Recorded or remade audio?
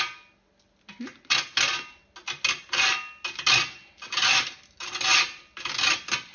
recorded